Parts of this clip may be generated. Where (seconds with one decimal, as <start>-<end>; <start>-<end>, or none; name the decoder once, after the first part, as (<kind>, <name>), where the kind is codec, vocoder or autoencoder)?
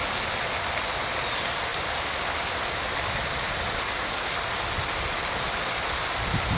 none